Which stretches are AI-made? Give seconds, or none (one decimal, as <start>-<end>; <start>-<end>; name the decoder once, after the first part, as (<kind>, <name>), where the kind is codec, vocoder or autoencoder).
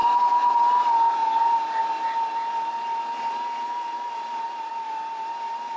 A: none